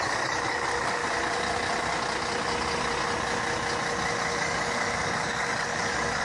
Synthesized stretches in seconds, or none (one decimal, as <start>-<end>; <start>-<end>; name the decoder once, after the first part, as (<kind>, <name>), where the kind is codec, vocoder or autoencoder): 0.0-1.0 (codec, DAC); 4.4-6.2